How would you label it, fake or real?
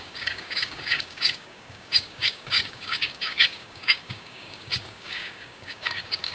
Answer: fake